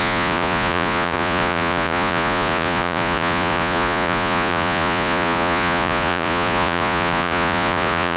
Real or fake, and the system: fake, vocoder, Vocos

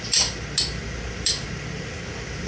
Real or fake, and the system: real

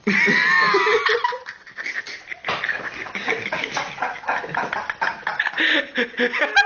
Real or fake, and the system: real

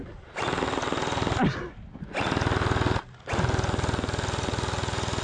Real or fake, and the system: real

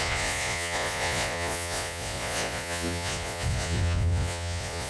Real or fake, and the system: fake, vocoder, Vocos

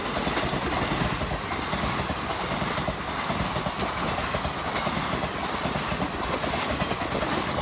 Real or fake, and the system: real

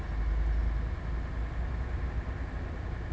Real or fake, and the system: real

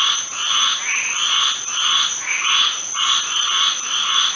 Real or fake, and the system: fake, vocoder, Vocos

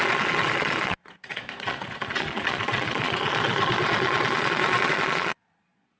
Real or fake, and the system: fake, vocoder, Vocos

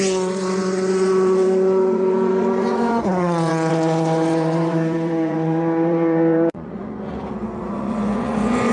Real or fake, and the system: fake, vocoder, Vocos